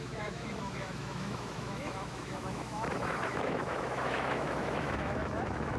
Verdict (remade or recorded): remade